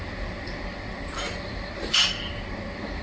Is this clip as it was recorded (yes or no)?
yes